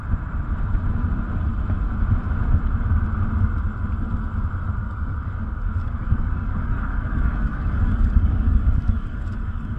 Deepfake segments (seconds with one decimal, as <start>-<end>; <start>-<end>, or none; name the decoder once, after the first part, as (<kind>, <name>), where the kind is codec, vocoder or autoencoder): 4.8-9.8 (codec, DAC)